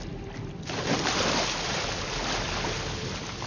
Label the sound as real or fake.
real